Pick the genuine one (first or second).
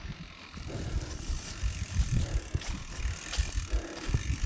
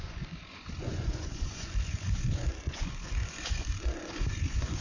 first